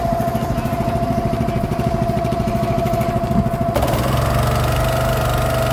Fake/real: real